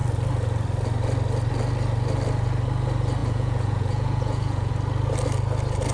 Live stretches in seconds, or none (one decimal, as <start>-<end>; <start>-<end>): 0.0-3.2; 4.7-5.9